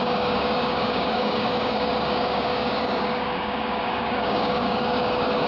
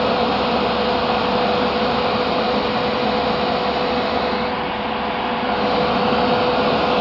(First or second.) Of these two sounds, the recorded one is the second